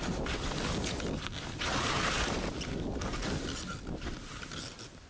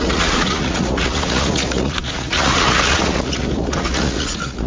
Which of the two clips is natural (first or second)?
first